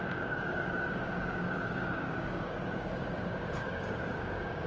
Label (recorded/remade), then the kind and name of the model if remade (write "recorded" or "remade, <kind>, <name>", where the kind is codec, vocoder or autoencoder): remade, codec, DAC